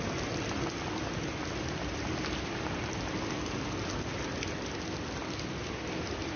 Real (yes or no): yes